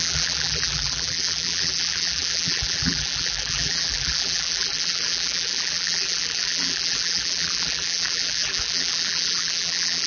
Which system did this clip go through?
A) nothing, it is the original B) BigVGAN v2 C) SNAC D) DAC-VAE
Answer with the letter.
B